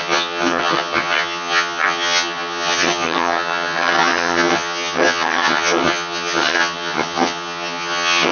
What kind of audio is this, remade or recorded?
remade